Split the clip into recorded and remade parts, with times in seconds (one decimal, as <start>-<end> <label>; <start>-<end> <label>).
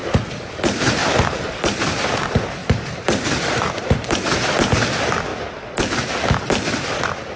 0.0-1.0 recorded; 1.0-1.5 remade; 1.5-2.6 recorded; 2.6-4.2 remade; 4.2-7.4 recorded